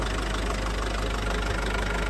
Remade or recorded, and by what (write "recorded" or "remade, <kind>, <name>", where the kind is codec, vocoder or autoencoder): recorded